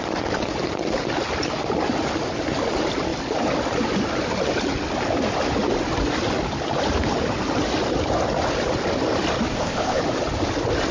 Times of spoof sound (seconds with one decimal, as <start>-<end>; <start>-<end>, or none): 9.5-10.0